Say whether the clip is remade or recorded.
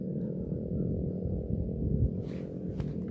recorded